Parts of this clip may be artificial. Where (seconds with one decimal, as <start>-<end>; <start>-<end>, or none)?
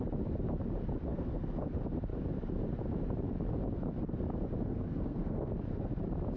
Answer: 1.1-1.6; 4.7-5.5